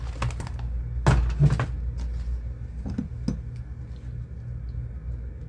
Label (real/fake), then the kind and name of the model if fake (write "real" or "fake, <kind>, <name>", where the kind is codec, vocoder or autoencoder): real